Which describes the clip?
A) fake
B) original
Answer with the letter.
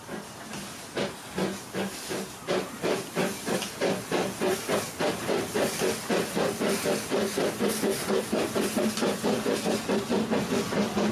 B